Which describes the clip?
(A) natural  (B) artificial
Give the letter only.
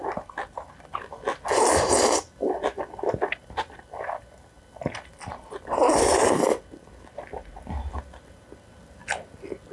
A